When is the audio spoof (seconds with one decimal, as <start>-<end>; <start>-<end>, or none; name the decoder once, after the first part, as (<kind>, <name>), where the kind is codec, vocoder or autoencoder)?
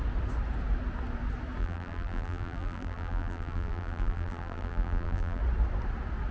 1.6-5.4 (vocoder, BigVGAN v2)